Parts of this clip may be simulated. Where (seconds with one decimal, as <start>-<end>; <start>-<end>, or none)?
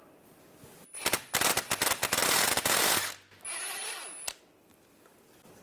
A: 2.2-2.8